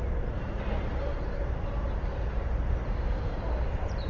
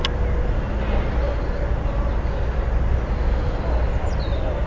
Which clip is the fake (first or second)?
first